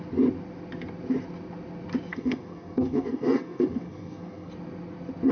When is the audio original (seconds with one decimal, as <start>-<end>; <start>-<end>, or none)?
0.0-2.1; 4.5-5.3